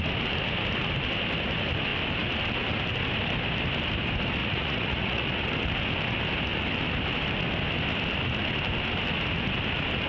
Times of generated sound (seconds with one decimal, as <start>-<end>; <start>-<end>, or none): 4.4-5.3